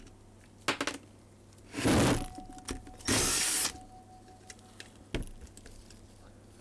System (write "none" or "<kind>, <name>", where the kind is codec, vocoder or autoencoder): none